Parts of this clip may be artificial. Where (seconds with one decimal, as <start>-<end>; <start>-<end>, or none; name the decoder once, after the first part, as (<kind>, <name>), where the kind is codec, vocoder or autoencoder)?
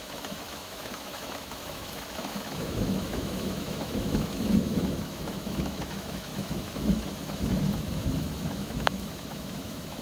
0.0-10.0 (autoencoder, DAC-VAE)